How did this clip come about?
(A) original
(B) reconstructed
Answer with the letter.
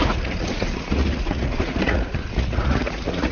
B